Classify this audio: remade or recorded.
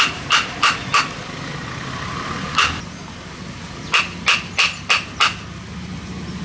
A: recorded